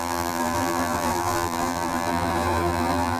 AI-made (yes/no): yes